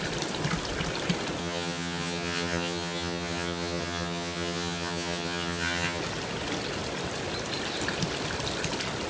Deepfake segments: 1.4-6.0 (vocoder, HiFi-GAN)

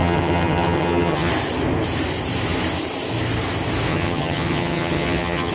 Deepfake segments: 0.0-1.3 (vocoder, HiFi-GAN); 3.9-5.5

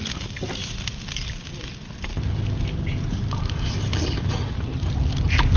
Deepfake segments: none

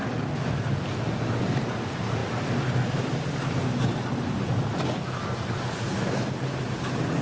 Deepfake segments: none